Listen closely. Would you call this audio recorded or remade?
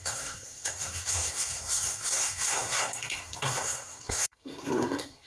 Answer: remade